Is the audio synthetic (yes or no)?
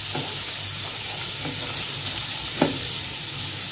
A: no